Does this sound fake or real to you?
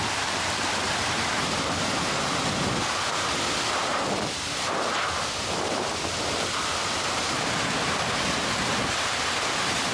fake